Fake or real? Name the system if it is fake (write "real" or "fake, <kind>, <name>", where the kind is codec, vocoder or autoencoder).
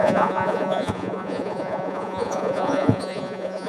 fake, vocoder, Vocos